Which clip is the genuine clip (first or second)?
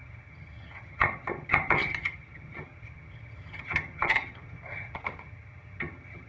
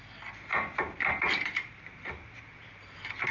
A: second